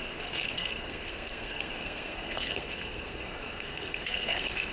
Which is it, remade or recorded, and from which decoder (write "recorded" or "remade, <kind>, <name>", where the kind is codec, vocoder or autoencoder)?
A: remade, codec, SNAC